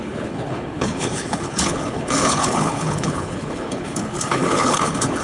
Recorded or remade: remade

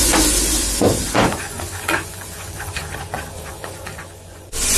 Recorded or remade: remade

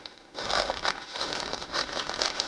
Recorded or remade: remade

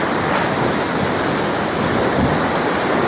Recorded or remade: recorded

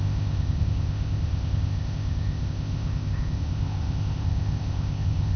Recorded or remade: remade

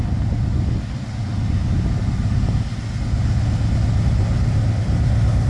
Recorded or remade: recorded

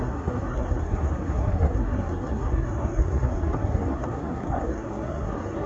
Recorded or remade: remade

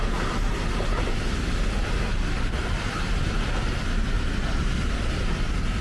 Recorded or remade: recorded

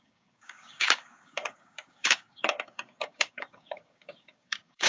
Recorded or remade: remade